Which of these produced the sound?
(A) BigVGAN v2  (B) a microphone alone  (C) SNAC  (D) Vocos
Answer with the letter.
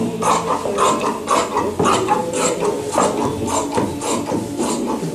B